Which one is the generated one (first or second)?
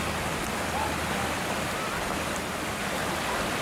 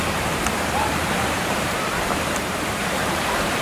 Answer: second